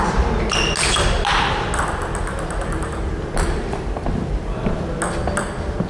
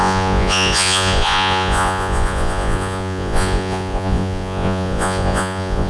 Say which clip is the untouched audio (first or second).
first